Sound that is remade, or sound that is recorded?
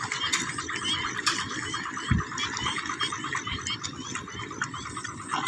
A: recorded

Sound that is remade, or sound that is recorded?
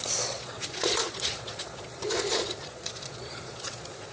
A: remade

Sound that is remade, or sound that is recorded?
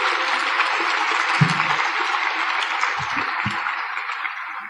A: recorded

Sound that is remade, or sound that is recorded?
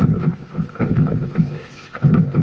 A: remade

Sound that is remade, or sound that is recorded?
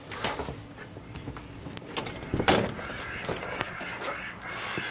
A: recorded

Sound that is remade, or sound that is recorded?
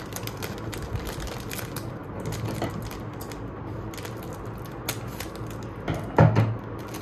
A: recorded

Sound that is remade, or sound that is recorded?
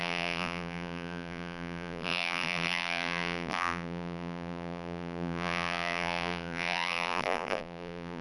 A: remade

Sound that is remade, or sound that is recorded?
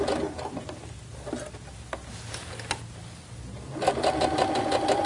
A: recorded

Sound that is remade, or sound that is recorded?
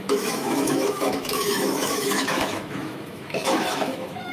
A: remade